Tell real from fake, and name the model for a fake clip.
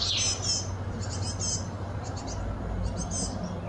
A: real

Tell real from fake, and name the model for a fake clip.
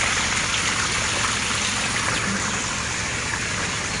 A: real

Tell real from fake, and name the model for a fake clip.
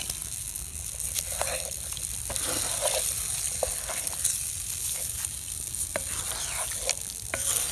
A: real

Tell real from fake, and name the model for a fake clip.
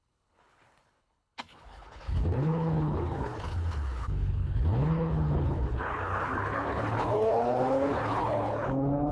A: fake, codec, HILCodec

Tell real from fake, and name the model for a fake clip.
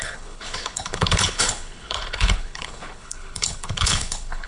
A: fake, codec, HILCodec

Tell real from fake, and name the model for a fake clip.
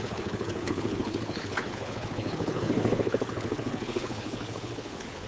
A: fake, codec, HILCodec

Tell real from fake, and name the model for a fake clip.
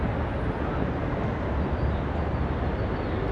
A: real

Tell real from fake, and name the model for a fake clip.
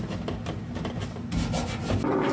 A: real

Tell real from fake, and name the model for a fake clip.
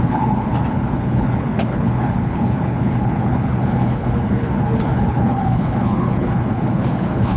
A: fake, codec, HILCodec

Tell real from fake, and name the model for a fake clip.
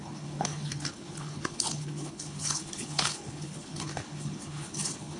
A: fake, codec, HILCodec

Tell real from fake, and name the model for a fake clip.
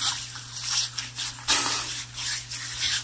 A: real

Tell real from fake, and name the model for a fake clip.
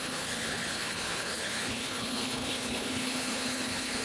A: fake, codec, HILCodec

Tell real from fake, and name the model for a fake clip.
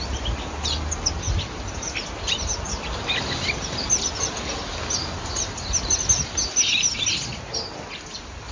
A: real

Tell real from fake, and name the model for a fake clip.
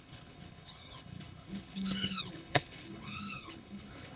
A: fake, codec, HILCodec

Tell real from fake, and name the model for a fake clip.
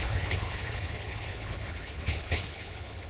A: fake, codec, HILCodec